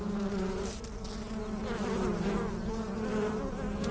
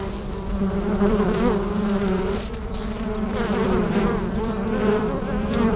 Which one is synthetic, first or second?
second